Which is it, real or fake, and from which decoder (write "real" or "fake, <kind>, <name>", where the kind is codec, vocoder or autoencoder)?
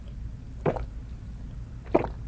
real